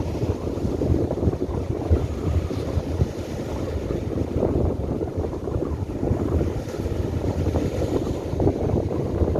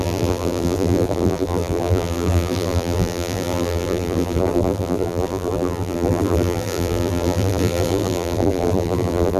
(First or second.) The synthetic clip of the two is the second